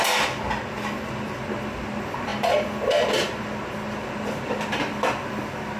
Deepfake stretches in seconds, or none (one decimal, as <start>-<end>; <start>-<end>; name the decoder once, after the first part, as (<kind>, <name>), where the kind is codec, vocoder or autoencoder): none